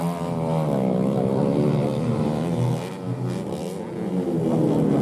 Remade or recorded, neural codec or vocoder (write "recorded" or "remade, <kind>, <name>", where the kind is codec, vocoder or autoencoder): recorded